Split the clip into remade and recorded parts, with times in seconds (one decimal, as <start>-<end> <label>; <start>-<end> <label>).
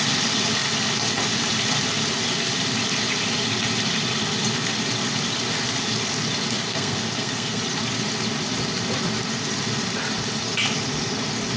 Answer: 0.0-6.7 recorded; 6.7-7.6 remade; 7.6-11.6 recorded